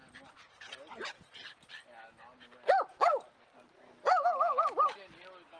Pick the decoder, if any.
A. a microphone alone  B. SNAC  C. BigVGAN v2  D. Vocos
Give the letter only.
A